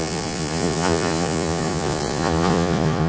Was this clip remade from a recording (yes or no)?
yes